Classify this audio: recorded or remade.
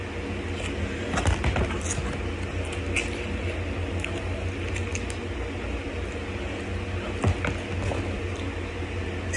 recorded